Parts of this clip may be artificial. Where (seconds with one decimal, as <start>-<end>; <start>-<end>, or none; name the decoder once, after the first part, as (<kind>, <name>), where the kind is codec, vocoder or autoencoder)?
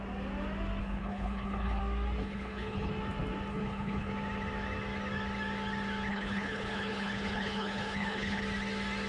0.8-1.8 (codec, HILCodec); 2.2-2.9; 3.5-4.1; 6.1-8.4